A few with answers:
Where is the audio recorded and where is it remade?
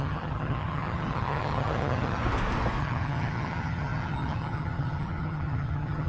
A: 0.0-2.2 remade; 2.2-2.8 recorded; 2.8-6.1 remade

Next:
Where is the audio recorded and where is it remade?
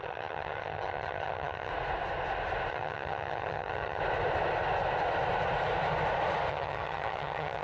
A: 0.0-1.7 remade; 1.7-2.7 recorded; 2.7-4.0 remade; 4.0-6.5 recorded; 6.5-7.6 remade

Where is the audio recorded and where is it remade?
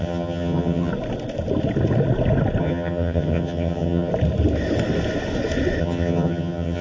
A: 0.0-0.9 remade; 0.9-2.6 recorded; 2.6-4.1 remade; 4.1-5.8 recorded; 5.8-6.8 remade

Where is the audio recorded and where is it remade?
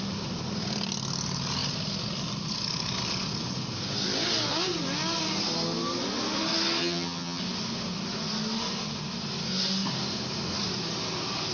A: 0.0-6.8 recorded; 6.8-7.4 remade; 7.4-11.5 recorded